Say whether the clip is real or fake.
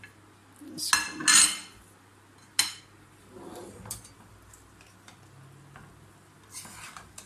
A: real